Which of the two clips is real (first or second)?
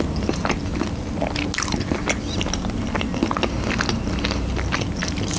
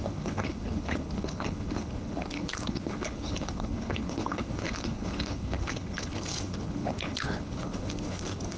first